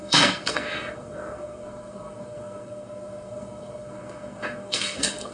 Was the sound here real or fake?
fake